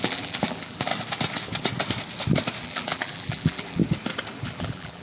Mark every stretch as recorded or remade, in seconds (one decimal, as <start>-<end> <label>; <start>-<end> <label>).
0.0-0.9 remade; 0.9-2.6 recorded; 2.6-3.8 remade; 3.8-4.4 recorded; 4.4-5.0 remade